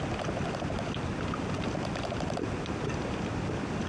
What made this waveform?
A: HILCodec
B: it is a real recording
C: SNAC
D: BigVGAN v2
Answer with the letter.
D